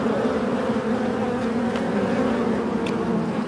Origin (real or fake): real